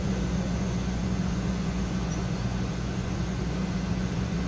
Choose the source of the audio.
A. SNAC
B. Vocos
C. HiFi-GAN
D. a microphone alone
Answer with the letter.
B